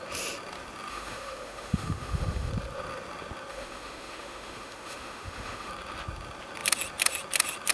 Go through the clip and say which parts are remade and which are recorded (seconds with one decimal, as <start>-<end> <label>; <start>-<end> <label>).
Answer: 0.0-0.9 recorded; 0.9-2.5 remade; 2.5-3.5 recorded; 3.5-5.7 remade; 5.7-7.7 recorded